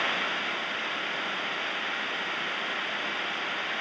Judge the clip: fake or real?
real